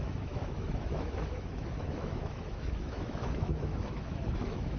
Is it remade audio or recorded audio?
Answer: remade